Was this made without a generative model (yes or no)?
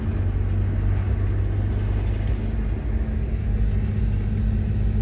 yes